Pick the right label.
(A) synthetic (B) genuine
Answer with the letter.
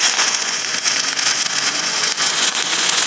A